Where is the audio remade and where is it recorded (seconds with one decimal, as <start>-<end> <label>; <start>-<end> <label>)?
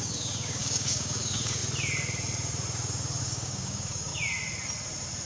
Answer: 0.0-1.6 remade; 1.6-3.2 recorded; 3.2-4.1 remade; 4.1-5.3 recorded